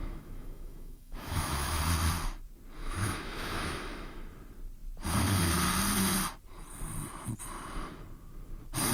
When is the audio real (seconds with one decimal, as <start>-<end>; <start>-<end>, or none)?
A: 1.8-2.8; 4.2-8.9